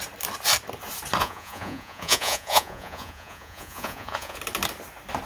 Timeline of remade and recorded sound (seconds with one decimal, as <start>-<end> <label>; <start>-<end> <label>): 0.0-1.2 recorded; 1.2-4.4 remade; 4.4-5.3 recorded